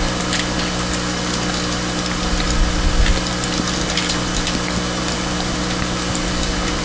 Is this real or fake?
real